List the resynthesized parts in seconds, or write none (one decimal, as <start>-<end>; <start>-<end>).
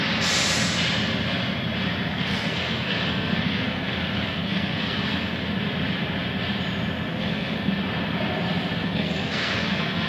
2.1-5.5; 7.1-7.7; 8.8-10.1